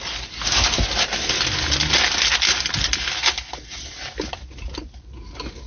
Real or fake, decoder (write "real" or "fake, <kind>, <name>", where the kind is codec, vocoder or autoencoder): real